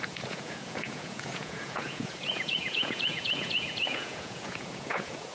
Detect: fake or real fake